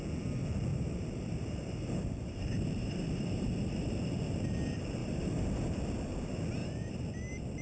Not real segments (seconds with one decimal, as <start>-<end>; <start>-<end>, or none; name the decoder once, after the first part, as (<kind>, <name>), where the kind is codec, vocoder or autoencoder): 0.7-4.0 (vocoder, BigVGAN v2); 5.0-5.7; 6.6-7.1